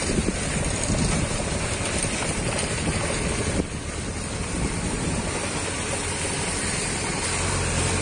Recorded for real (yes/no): yes